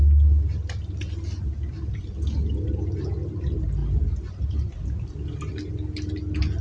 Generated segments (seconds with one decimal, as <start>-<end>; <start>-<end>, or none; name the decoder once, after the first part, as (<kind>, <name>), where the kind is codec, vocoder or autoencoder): none